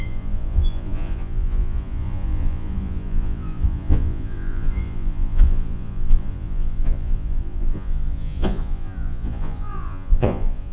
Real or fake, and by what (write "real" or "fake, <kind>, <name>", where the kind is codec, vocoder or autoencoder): fake, vocoder, Vocos